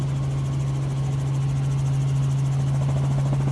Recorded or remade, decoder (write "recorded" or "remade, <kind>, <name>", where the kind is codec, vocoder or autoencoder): recorded